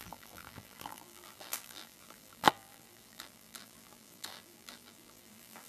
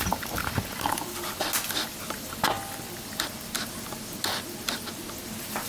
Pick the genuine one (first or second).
second